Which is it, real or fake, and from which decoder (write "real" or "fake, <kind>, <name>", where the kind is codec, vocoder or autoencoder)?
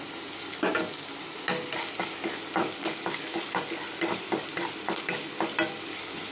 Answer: real